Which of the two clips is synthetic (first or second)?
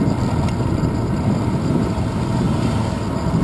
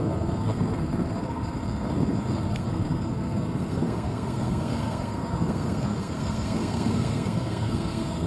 second